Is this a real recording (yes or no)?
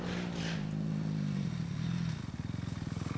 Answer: yes